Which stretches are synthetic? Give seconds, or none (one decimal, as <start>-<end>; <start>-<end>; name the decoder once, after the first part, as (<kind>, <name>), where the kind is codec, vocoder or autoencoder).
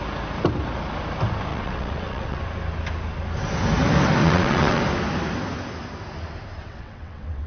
1.5-2.4 (vocoder, WaveNeXt); 4.2-4.8; 6.6-7.5